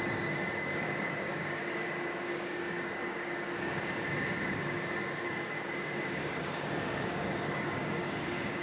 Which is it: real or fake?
fake